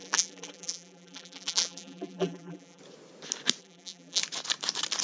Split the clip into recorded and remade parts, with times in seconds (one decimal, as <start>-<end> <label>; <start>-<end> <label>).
0.0-2.8 remade; 2.8-3.6 recorded; 3.6-4.2 remade; 4.2-5.0 recorded